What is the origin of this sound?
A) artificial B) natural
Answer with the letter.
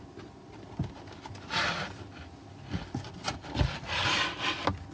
B